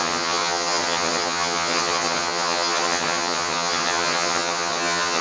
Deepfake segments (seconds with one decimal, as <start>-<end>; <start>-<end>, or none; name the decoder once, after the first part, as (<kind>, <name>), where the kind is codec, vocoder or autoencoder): 0.0-5.2 (vocoder, HiFi-GAN)